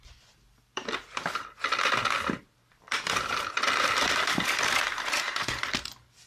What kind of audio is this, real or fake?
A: fake